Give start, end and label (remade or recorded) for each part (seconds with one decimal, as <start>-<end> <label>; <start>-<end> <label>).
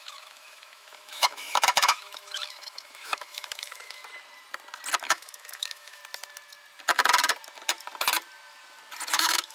0.0-4.0 remade; 4.0-5.0 recorded; 5.0-6.0 remade; 6.0-9.1 recorded; 9.1-9.5 remade